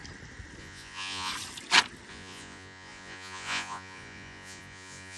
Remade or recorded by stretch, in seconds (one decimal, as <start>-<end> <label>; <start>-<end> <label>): 0.0-0.6 recorded; 0.6-1.3 remade; 1.3-2.1 recorded; 2.1-5.2 remade